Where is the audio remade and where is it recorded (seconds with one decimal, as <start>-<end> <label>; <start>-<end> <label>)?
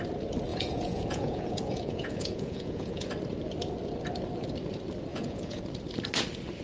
0.0-0.5 recorded; 0.5-3.1 remade; 3.1-5.1 recorded; 5.1-5.6 remade; 5.6-6.6 recorded